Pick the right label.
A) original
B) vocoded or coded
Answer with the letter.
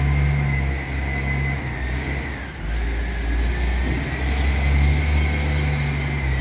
A